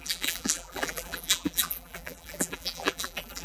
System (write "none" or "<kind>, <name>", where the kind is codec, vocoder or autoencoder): vocoder, BigVGAN v2